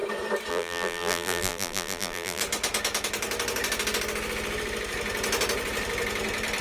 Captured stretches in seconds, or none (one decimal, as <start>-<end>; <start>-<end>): 0.0-0.5; 2.4-6.6